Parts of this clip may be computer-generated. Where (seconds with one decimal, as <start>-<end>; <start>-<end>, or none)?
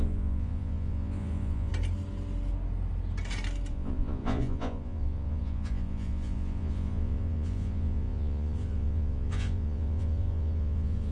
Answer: 0.0-1.7; 3.7-11.1